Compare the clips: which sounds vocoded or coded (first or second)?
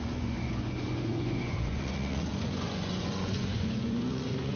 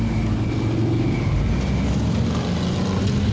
first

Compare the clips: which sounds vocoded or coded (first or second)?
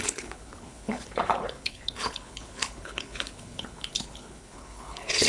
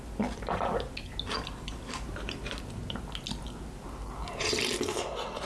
first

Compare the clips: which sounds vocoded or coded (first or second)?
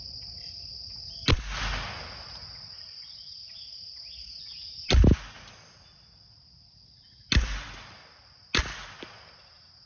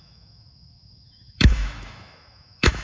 second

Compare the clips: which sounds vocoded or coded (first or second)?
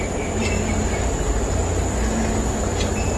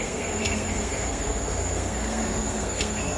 second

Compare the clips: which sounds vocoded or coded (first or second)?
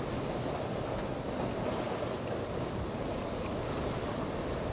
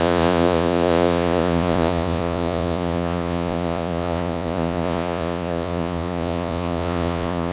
second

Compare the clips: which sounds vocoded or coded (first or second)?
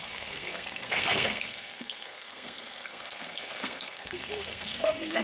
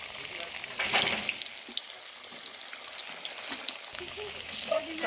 first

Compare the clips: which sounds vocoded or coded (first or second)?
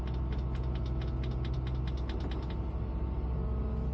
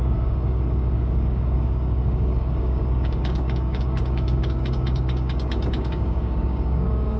second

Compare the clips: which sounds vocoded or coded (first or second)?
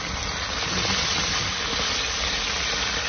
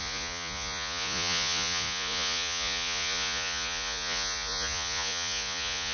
second